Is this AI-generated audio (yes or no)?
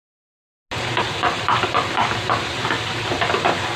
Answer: no